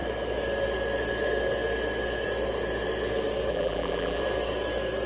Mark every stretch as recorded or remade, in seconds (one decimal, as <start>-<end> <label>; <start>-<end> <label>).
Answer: 0.0-3.5 recorded; 3.5-4.2 remade; 4.2-5.1 recorded